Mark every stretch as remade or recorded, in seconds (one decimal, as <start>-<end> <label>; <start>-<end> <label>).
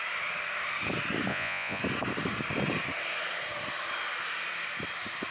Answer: 0.0-1.3 recorded; 1.3-1.8 remade; 1.8-5.3 recorded